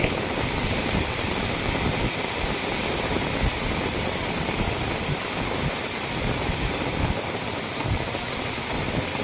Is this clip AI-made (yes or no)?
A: no